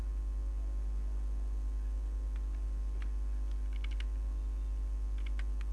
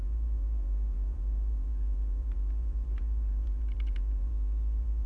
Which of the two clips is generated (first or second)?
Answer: second